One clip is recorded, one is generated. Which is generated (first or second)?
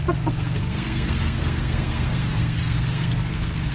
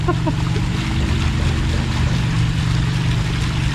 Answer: first